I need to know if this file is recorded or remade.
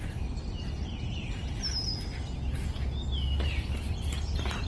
recorded